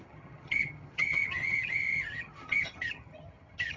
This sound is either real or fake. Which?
fake